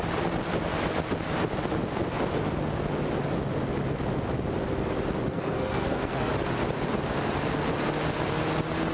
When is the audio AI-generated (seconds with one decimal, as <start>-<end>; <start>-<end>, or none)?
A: 5.3-6.3